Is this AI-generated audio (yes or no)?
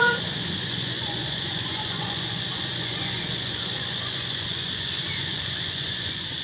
yes